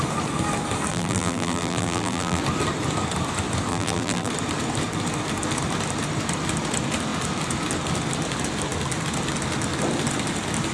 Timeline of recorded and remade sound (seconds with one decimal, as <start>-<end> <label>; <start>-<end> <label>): 0.0-0.9 recorded; 0.9-2.4 remade; 2.4-3.7 recorded; 3.7-4.3 remade; 4.3-10.7 recorded